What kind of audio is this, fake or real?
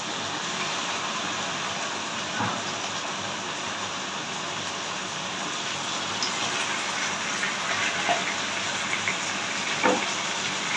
real